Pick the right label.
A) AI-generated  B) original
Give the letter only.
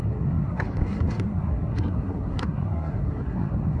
A